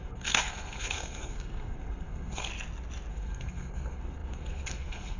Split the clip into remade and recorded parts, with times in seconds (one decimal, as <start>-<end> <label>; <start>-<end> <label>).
0.0-2.5 remade; 2.5-3.1 recorded; 3.1-5.2 remade